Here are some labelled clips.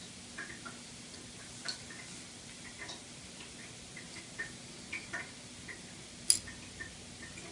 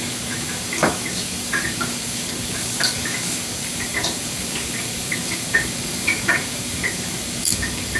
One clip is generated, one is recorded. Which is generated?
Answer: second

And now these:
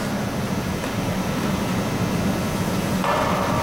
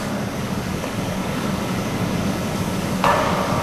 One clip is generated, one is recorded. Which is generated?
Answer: second